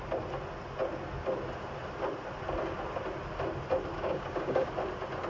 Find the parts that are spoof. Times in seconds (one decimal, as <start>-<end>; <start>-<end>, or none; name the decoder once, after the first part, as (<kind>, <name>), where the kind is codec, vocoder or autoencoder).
3.9-4.7 (codec, DAC)

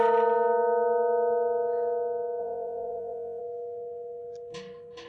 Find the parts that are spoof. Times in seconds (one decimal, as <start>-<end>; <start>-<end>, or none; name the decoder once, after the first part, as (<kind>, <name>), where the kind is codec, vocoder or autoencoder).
2.4-3.4 (vocoder, Vocos)

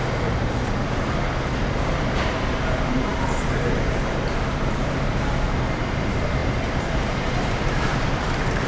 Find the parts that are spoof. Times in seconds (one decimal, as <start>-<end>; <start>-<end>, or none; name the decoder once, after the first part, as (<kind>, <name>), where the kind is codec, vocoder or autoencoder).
0.0-8.7 (vocoder, BigVGAN v2)